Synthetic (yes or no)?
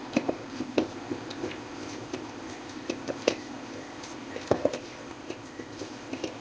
yes